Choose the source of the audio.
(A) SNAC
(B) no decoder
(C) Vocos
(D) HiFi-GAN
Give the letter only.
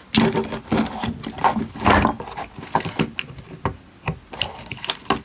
B